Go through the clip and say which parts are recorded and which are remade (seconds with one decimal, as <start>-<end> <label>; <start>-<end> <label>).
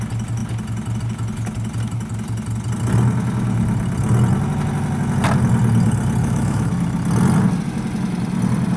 0.0-6.2 recorded; 6.2-6.7 remade; 6.7-8.8 recorded